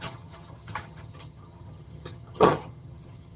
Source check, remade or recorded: remade